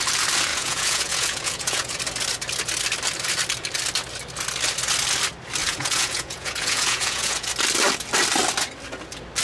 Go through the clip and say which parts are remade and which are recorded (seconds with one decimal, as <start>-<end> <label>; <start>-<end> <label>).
0.0-0.5 recorded; 0.5-2.0 remade; 2.0-5.6 recorded; 5.6-7.5 remade; 7.5-9.4 recorded